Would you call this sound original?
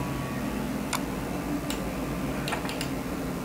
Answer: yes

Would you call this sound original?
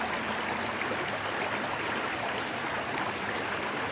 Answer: yes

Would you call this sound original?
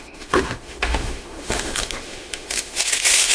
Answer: no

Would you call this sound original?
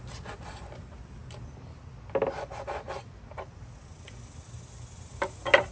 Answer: yes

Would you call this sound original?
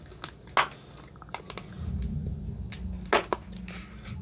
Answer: yes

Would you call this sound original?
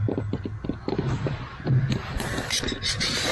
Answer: yes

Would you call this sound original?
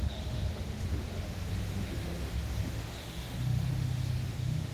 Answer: no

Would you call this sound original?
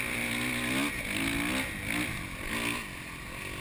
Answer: yes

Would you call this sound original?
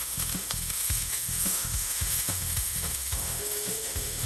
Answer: no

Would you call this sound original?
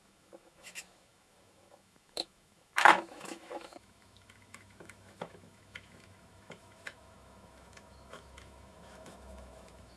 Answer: no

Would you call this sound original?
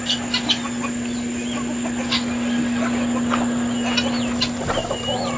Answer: yes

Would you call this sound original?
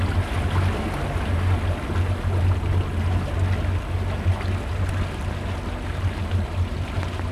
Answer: yes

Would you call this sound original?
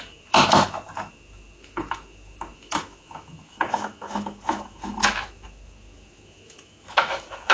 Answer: no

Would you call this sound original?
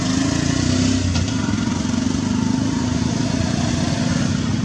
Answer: yes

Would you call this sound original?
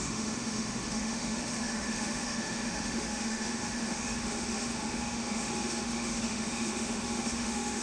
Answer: no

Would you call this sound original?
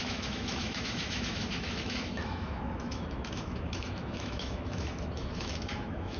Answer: no